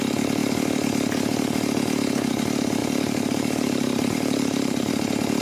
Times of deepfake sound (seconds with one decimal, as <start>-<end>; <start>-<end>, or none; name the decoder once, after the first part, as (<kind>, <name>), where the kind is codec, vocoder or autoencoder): 2.8-4.9 (vocoder, BigVGAN v2)